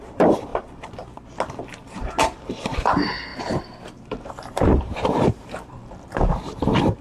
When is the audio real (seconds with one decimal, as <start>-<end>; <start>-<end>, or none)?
0.5-2.4; 3.3-3.9; 5.8-6.4